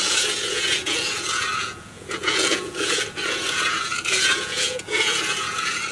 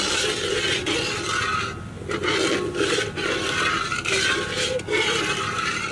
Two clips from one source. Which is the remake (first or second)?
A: first